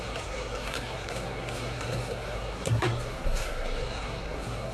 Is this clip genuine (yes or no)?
no